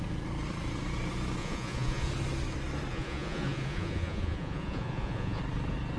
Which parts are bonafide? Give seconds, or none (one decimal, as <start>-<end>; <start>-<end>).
0.0-1.4; 2.1-2.9; 5.4-6.0